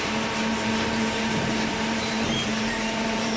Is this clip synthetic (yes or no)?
yes